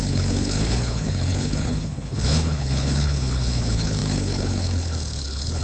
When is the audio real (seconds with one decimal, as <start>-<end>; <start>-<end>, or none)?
none